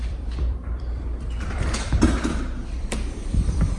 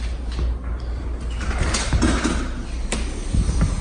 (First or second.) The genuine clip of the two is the second